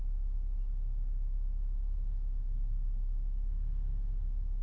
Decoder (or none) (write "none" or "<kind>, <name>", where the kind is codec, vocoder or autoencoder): none